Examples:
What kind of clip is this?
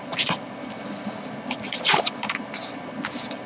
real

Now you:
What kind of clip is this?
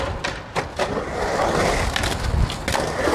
real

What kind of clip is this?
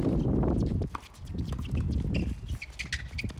real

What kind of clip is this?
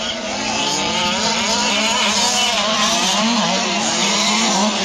fake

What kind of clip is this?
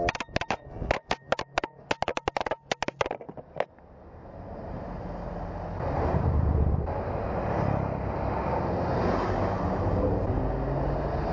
real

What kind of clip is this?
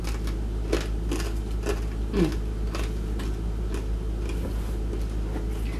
real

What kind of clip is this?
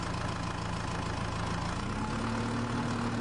real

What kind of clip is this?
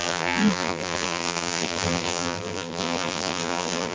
fake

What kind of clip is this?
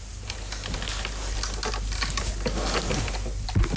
real